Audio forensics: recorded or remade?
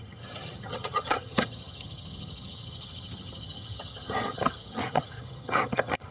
remade